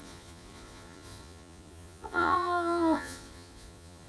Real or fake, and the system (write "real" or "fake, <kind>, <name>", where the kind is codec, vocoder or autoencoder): fake, vocoder, Vocos